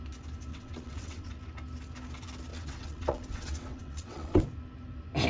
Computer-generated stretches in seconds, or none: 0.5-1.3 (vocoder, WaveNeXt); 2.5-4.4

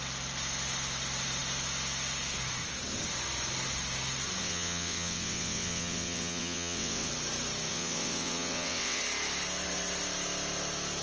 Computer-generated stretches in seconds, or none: 4.4-7.1 (vocoder, WaveNeXt); 7.7-9.0

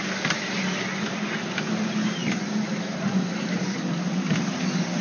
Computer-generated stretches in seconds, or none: none

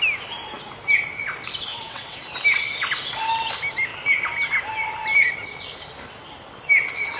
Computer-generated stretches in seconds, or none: 1.7-2.2 (vocoder, WaveNeXt)

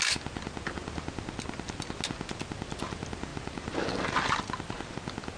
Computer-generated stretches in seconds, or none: none

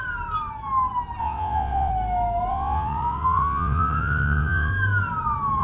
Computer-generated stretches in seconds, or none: 1.2-1.9 (vocoder, WaveNeXt); 2.5-4.7